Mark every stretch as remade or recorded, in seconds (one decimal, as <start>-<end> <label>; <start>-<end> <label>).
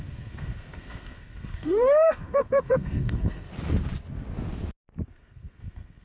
0.0-3.5 remade; 3.5-5.1 recorded; 5.1-6.0 remade